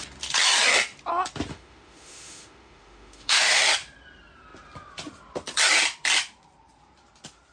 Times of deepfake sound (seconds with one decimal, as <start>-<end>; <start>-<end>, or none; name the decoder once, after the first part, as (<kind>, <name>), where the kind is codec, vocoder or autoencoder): 1.5-3.6 (autoencoder, DAC-VAE)